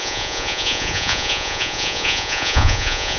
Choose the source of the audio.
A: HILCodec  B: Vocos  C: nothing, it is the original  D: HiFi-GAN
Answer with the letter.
B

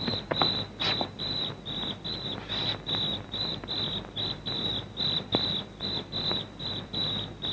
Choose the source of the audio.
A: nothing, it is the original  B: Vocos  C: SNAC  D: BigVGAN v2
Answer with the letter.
A